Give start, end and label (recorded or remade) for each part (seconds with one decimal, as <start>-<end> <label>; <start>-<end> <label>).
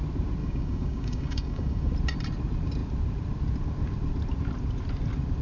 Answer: 0.0-0.4 recorded; 0.4-1.9 remade; 1.9-5.4 recorded